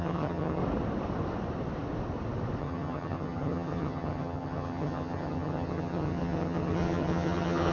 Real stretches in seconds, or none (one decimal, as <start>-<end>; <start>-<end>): 0.6-2.6